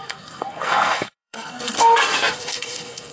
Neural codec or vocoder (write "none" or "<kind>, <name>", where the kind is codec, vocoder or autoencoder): codec, SNAC